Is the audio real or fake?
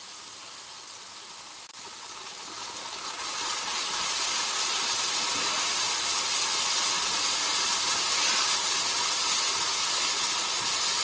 real